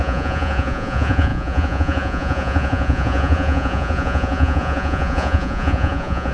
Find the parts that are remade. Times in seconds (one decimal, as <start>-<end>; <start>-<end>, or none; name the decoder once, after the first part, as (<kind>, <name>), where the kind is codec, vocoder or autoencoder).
0.0-6.3 (vocoder, Vocos)